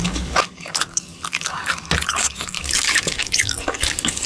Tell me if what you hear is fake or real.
fake